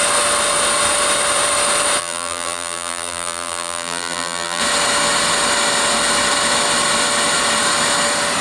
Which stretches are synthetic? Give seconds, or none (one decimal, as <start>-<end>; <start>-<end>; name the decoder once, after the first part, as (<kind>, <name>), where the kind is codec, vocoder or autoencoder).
2.0-4.6 (vocoder, BigVGAN v2)